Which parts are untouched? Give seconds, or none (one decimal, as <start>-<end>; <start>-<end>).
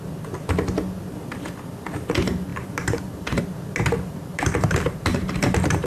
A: 0.0-2.5; 3.4-4.3